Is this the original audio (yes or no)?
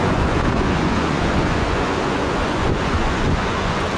no